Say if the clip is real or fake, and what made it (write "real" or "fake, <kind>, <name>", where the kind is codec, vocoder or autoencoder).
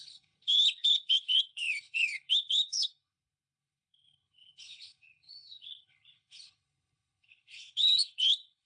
fake, codec, HILCodec